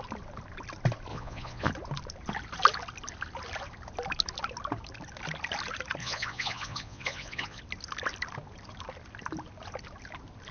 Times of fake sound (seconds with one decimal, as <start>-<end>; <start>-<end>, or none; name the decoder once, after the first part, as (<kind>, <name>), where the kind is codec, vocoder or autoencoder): 1.1-1.7 (vocoder, Vocos); 6.0-7.6

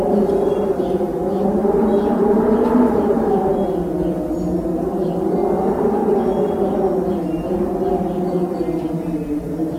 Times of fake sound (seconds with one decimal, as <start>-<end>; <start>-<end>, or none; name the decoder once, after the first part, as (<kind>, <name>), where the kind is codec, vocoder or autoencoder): 0.0-1.1 (vocoder, BigVGAN v2); 2.1-3.5; 5.6-6.0; 9.0-9.8